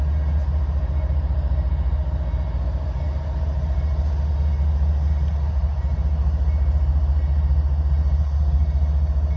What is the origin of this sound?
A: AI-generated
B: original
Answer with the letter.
B